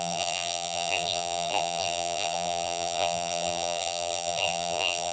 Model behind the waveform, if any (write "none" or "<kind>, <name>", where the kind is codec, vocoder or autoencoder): vocoder, BigVGAN v2